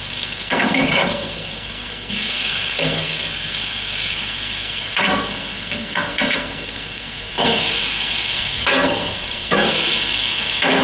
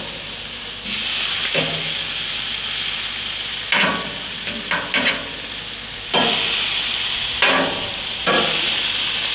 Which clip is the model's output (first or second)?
first